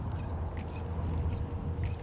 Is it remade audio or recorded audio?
recorded